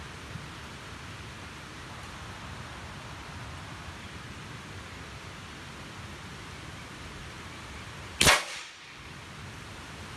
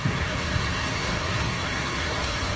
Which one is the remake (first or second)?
second